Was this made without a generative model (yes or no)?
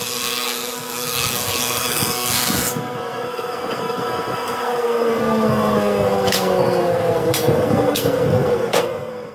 no